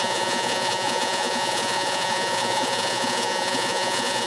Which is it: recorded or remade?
remade